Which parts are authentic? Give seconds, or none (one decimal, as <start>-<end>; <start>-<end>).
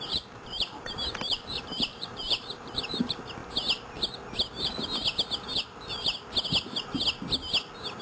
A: 3.4-8.0